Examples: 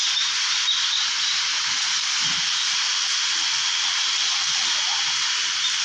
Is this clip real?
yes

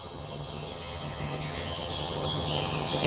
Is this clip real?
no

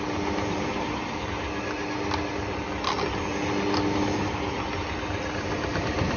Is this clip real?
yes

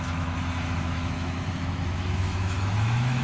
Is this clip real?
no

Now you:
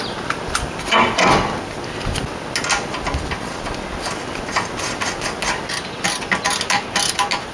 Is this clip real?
yes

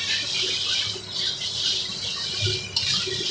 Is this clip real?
yes